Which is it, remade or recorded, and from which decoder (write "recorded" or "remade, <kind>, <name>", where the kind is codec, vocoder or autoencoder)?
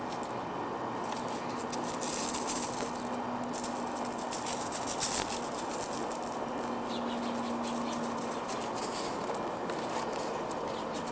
recorded